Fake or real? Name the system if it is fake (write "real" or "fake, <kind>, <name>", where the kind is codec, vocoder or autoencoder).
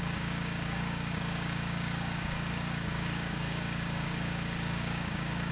fake, codec, DAC